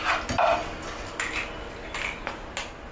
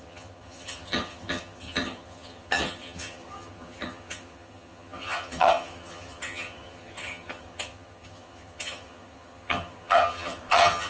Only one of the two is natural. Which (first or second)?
first